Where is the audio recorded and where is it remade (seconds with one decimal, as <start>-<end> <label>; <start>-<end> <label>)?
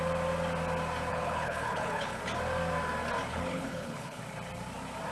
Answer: 0.0-1.1 recorded; 1.1-2.2 remade; 2.2-3.3 recorded; 3.3-4.2 remade; 4.2-5.1 recorded